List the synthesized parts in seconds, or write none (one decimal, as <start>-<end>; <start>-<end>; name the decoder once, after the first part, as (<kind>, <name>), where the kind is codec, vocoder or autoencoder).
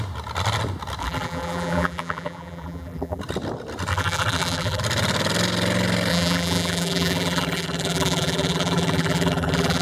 1.0-3.2 (vocoder, BigVGAN v2); 3.9-4.8; 6.1-9.8